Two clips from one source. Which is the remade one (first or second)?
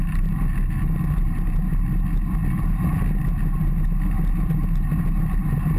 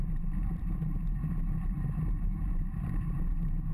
second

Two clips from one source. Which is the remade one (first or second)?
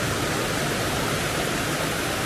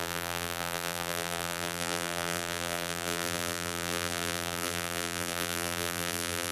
second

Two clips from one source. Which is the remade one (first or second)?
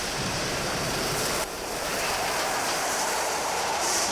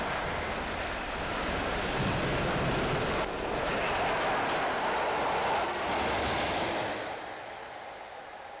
first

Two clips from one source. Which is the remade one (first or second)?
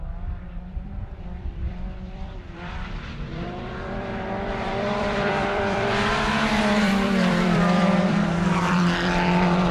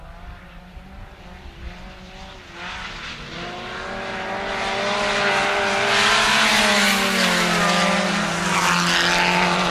first